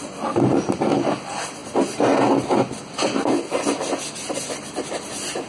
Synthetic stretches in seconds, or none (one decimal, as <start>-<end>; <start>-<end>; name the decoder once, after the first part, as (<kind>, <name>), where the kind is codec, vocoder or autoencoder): none